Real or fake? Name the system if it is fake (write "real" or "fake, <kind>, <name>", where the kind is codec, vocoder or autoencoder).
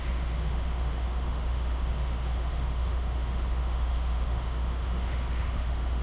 fake, autoencoder, DAC-VAE